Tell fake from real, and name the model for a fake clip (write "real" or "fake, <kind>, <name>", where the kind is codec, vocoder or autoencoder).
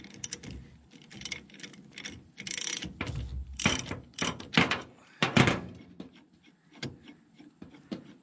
real